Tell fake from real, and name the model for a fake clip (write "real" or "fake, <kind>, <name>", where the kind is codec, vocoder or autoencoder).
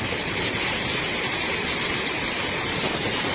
real